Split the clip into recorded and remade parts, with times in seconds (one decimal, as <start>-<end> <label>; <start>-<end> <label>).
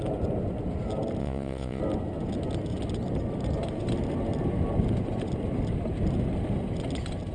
0.0-1.2 recorded; 1.2-1.8 remade; 1.8-7.3 recorded